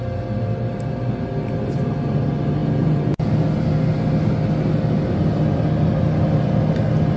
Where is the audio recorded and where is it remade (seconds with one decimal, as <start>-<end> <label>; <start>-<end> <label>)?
0.0-2.6 recorded; 2.6-3.3 remade; 3.3-7.2 recorded